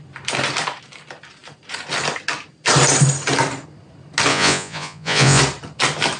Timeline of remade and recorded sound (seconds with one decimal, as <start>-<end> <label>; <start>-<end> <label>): 0.0-4.3 recorded; 4.3-5.4 remade; 5.4-6.2 recorded